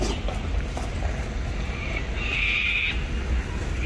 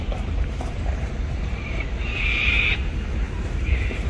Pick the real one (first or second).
first